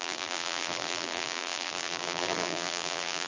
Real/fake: fake